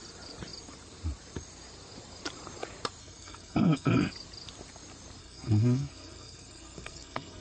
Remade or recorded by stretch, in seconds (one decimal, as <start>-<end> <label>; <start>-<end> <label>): 0.0-3.0 recorded; 3.0-4.1 remade; 4.1-5.2 recorded; 5.2-7.4 remade